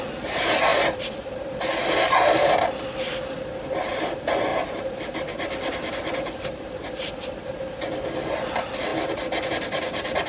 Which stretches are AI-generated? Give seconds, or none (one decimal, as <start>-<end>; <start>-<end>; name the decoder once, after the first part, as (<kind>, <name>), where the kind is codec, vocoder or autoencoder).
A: 4.5-7.1 (vocoder, BigVGAN v2); 7.5-8.3